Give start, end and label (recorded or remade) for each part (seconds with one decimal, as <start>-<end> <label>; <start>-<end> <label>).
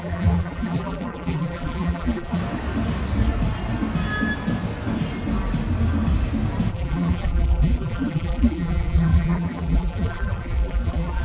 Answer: 0.0-2.4 remade; 2.4-6.7 recorded; 6.7-11.2 remade